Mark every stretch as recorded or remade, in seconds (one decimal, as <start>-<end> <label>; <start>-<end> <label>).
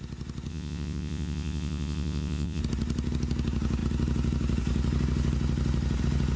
0.0-0.5 recorded; 0.5-2.6 remade; 2.6-6.4 recorded